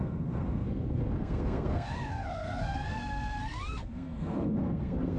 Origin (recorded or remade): remade